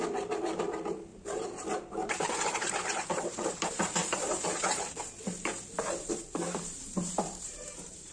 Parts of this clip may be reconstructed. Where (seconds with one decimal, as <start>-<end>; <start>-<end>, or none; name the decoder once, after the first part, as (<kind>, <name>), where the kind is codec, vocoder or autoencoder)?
1.1-4.8 (vocoder, BigVGAN v2); 6.0-8.1